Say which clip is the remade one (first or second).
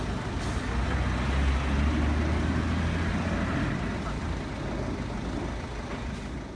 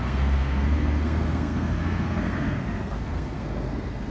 second